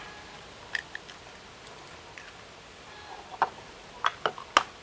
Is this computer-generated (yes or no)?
no